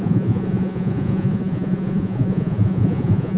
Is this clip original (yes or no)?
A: no